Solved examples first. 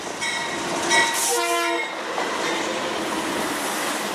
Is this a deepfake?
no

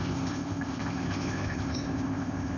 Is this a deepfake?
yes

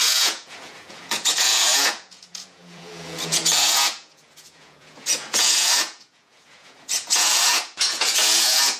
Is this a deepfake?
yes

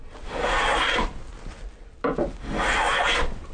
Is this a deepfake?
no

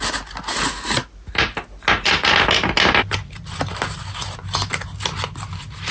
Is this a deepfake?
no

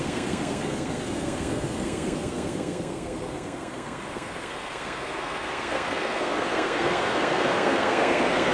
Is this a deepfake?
yes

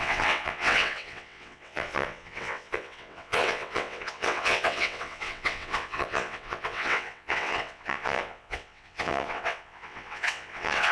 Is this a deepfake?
yes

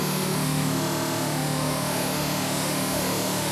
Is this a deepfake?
yes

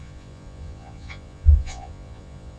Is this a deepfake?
yes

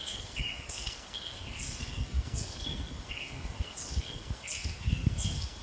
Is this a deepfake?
yes